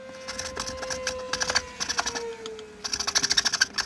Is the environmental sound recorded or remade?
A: recorded